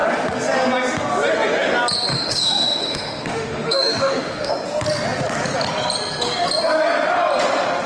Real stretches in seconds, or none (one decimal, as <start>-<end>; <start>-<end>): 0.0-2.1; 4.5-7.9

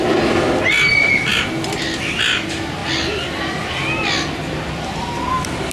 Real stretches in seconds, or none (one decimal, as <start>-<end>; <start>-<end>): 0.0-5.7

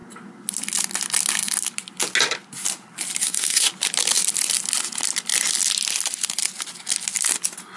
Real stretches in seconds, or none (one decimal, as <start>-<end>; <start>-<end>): 0.0-3.2; 3.7-7.8

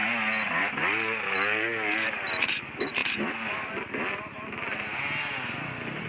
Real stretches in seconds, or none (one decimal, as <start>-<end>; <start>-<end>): 0.0-6.1

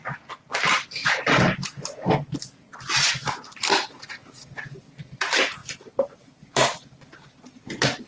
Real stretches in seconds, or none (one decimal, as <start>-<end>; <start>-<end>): 0.0-8.1

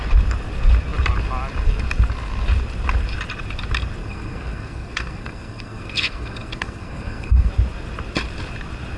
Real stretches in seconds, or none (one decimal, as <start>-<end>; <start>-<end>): 0.0-4.0; 7.5-9.0